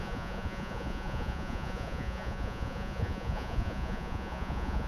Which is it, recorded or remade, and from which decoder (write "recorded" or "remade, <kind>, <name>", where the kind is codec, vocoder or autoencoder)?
remade, vocoder, Vocos